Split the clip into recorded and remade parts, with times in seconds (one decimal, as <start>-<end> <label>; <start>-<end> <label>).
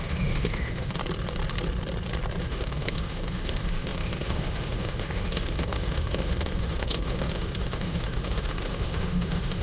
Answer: 0.0-1.0 remade; 1.0-2.4 recorded; 2.4-9.6 remade